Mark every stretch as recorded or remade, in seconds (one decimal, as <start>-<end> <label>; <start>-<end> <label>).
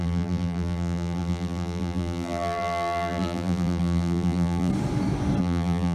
0.0-4.7 remade; 4.7-5.4 recorded; 5.4-5.9 remade